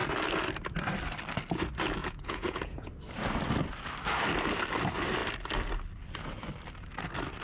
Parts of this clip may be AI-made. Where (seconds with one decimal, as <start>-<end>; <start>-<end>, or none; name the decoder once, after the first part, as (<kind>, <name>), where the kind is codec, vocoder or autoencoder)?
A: 2.0-2.9 (vocoder, Vocos)